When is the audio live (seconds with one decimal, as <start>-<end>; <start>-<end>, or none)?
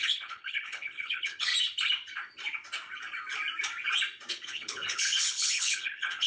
1.5-4.3